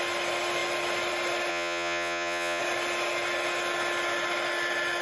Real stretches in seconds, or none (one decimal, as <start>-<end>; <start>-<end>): 0.0-1.5; 2.6-5.0